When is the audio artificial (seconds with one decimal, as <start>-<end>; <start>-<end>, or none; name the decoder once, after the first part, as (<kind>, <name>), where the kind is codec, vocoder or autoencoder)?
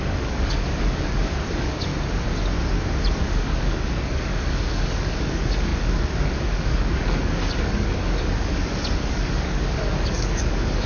0.0-1.9 (codec, DAC); 3.2-10.9